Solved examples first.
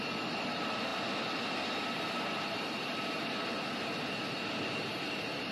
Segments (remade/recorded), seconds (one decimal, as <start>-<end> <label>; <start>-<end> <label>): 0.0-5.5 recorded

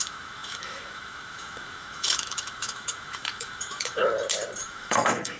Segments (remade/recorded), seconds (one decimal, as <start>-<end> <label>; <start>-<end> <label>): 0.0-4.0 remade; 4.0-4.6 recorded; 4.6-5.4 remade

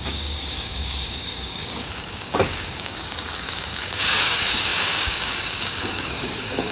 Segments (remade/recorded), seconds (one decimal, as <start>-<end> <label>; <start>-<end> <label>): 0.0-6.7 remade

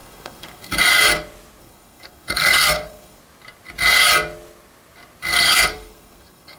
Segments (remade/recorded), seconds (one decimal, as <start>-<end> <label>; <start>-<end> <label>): 0.0-0.8 remade; 0.8-1.6 recorded; 1.6-3.2 remade; 3.2-5.3 recorded; 5.3-6.6 remade